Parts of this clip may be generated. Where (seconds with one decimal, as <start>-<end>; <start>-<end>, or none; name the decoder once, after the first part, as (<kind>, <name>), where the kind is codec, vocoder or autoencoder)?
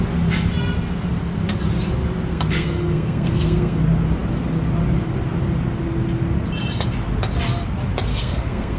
2.3-3.8 (codec, SNAC); 8.1-8.8